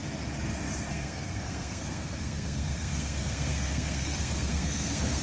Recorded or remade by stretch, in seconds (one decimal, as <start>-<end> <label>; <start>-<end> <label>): 0.0-0.9 recorded; 0.9-5.2 remade